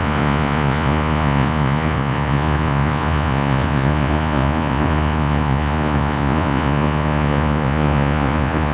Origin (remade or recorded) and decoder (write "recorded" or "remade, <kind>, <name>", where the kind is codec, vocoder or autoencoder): remade, vocoder, Vocos